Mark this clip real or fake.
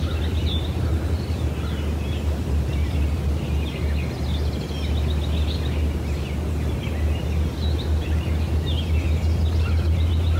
real